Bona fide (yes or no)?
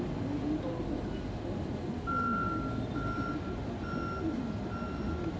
yes